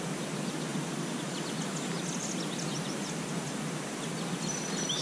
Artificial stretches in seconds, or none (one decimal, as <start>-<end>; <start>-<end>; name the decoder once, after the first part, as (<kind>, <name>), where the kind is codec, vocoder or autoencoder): 0.7-1.5 (vocoder, BigVGAN v2)